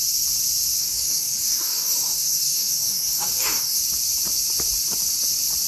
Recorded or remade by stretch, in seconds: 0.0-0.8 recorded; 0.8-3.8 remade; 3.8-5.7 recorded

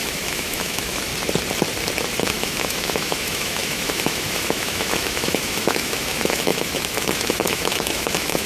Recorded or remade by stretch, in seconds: 0.0-1.1 remade; 1.1-2.2 recorded; 2.2-8.5 remade